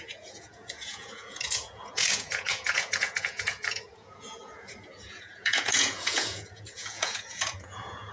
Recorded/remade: remade